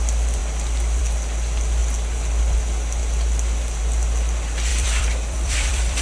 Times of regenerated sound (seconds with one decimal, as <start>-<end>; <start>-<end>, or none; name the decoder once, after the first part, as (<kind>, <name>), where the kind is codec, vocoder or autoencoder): 4.7-6.0 (vocoder, BigVGAN v2)